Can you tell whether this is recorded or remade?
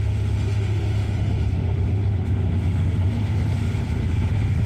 remade